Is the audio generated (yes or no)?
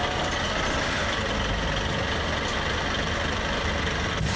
no